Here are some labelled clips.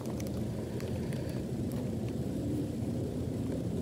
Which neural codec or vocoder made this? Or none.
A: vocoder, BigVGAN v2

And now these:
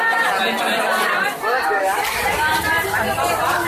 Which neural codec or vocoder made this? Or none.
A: none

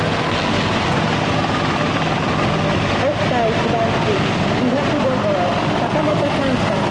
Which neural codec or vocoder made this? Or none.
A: none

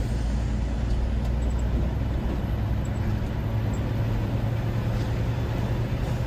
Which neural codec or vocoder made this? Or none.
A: none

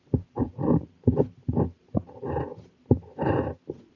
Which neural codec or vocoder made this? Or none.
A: none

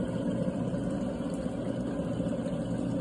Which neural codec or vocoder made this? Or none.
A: none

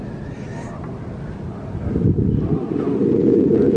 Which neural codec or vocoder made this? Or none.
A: none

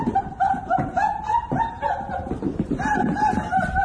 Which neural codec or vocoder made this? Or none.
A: vocoder, BigVGAN v2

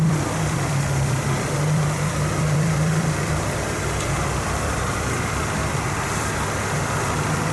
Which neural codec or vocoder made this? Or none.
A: vocoder, BigVGAN v2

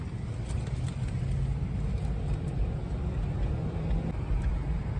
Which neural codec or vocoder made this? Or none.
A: none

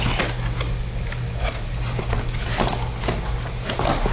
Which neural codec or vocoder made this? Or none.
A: none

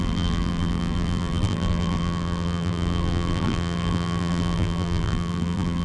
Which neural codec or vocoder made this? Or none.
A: vocoder, BigVGAN v2